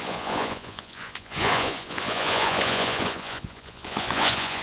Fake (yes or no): yes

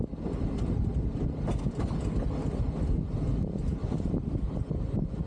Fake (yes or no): no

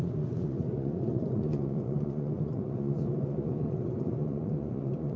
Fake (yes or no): yes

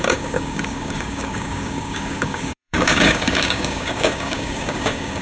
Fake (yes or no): yes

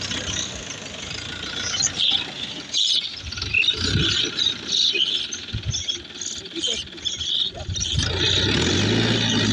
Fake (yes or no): no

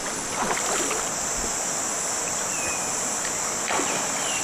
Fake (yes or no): no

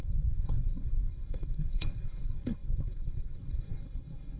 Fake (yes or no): yes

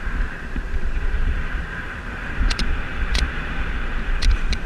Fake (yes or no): yes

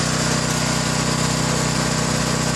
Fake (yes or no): no